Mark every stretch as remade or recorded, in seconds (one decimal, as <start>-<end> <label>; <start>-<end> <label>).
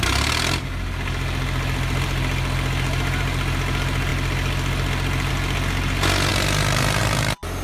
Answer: 0.0-7.6 recorded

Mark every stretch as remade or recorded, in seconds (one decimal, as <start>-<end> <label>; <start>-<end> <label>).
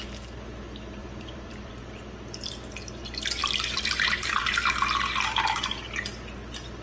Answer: 0.0-1.0 recorded; 1.0-1.7 remade; 1.7-3.4 recorded; 3.4-4.4 remade; 4.4-6.8 recorded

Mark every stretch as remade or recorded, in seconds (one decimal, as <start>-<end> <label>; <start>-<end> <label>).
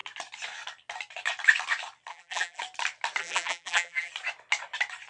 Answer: 0.0-2.1 recorded; 2.1-2.6 remade; 2.6-3.2 recorded; 3.2-4.1 remade; 4.1-5.1 recorded